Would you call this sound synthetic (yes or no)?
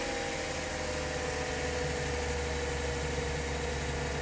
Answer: no